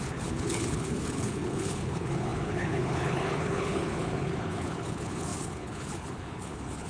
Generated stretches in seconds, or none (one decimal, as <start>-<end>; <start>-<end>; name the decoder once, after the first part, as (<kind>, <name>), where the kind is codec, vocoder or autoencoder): 0.0-6.9 (codec, HILCodec)